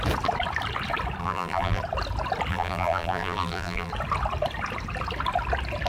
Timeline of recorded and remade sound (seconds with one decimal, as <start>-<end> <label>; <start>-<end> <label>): 0.0-1.2 recorded; 1.2-1.8 remade; 1.8-2.5 recorded; 2.5-3.9 remade; 3.9-5.9 recorded